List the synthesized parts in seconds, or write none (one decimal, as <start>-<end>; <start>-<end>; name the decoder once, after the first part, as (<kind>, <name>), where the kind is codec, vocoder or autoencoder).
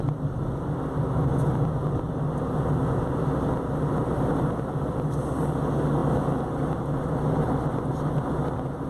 none